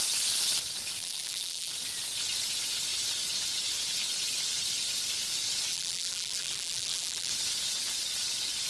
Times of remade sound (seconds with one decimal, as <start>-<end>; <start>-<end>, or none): 1.0-1.7; 5.7-7.3